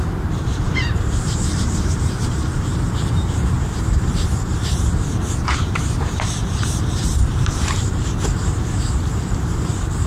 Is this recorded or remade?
remade